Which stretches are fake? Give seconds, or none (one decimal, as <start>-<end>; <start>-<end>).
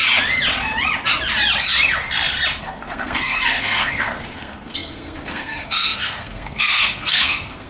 2.6-7.7